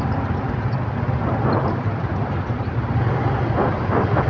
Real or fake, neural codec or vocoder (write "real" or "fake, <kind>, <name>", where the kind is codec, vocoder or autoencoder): real